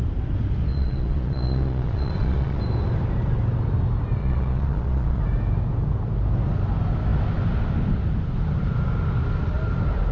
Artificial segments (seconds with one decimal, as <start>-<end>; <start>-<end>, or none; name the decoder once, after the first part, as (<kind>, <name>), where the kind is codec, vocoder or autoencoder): 0.7-2.6 (vocoder, Vocos); 4.2-5.2